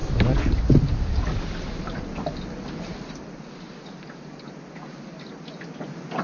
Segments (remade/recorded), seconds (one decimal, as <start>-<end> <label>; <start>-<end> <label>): 0.0-3.7 remade; 3.7-6.2 recorded